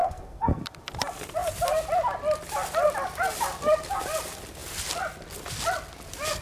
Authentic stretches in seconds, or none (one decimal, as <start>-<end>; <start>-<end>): 0.6-6.4